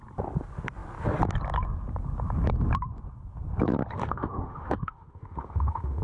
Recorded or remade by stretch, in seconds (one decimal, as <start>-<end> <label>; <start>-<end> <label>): 0.0-4.0 recorded; 4.0-6.0 remade